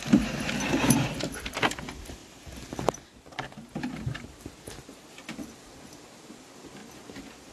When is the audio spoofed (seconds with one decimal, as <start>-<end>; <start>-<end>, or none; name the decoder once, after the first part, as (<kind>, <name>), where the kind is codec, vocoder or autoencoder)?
0.7-1.2 (vocoder, BigVGAN v2); 6.8-7.5